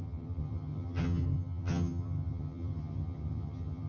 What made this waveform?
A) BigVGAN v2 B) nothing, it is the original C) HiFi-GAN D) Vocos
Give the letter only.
C